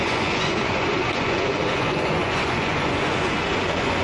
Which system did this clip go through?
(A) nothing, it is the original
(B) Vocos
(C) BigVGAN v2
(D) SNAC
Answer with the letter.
B